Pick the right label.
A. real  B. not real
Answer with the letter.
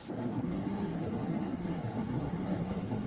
B